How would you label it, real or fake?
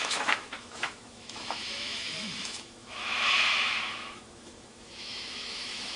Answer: fake